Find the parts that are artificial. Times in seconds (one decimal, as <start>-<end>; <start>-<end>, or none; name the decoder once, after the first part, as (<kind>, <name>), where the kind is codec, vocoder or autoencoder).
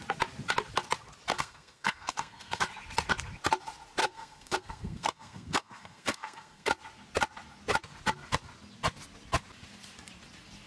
1.3-2.6 (codec, SNAC); 4.0-6.7